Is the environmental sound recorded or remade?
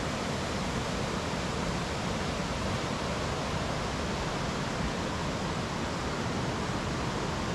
recorded